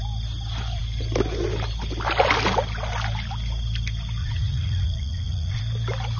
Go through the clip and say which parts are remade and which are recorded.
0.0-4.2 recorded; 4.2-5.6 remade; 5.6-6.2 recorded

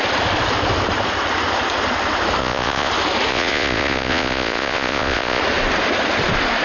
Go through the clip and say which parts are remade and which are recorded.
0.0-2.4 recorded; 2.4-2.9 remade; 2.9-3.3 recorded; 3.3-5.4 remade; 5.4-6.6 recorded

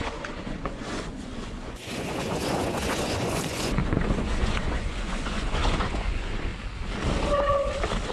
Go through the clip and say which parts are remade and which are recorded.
0.0-6.5 remade; 6.5-8.1 recorded

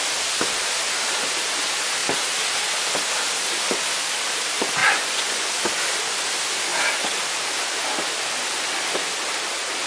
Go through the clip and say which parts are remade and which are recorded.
0.0-4.8 recorded; 4.8-5.5 remade; 5.5-9.9 recorded

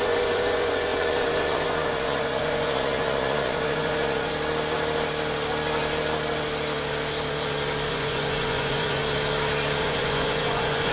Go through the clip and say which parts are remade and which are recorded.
0.0-4.3 remade; 4.3-7.9 recorded; 7.9-9.0 remade; 9.0-9.8 recorded; 9.8-10.9 remade

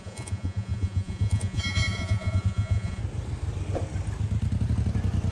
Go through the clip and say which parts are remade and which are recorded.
0.0-3.0 remade; 3.0-5.3 recorded

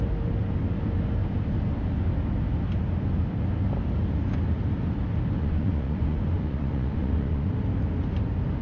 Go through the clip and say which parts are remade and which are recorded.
0.0-5.4 recorded; 5.4-7.5 remade; 7.5-8.6 recorded